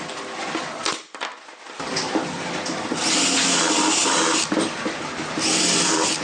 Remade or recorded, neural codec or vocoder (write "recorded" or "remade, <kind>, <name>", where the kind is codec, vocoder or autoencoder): recorded